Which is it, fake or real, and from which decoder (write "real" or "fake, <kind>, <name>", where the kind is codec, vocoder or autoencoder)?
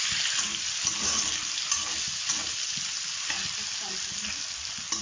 real